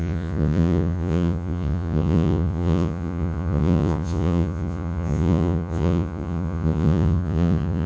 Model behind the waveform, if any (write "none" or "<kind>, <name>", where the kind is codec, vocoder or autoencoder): vocoder, Vocos